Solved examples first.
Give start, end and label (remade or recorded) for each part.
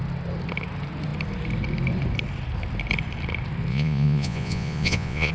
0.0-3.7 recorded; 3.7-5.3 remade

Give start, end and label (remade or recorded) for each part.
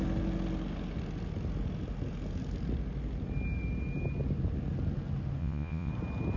0.0-5.4 recorded; 5.4-5.9 remade; 5.9-6.4 recorded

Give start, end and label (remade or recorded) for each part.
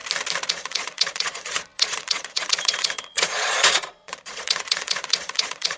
0.0-0.5 recorded; 0.5-5.8 remade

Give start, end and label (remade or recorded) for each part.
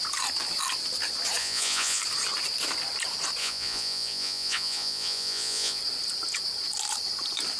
0.0-1.4 recorded; 1.4-2.0 remade; 2.0-3.4 recorded; 3.4-5.8 remade; 5.8-7.6 recorded